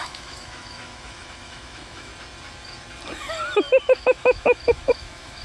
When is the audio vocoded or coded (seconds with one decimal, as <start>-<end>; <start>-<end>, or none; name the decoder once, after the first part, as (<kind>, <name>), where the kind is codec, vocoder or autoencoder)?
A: 0.0-2.1 (autoencoder, DAC-VAE); 3.8-5.4